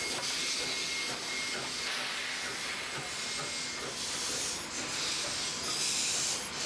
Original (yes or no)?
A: yes